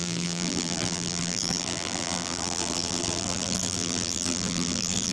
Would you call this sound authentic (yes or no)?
no